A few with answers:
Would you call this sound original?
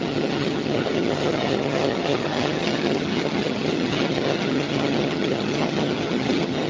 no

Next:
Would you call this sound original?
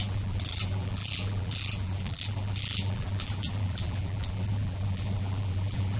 no